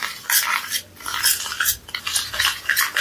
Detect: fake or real real